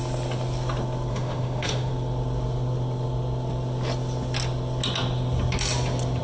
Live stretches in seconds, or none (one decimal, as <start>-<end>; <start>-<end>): 0.0-1.1; 1.9-6.2